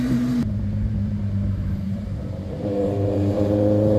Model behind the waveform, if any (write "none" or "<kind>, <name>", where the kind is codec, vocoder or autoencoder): vocoder, BigVGAN v2